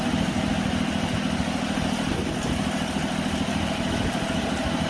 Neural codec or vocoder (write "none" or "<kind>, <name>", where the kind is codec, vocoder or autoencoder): none